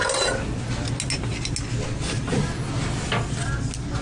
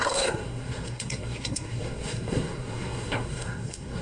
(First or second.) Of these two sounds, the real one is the first